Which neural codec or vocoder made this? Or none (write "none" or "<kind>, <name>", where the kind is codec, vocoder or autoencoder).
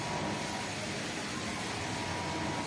none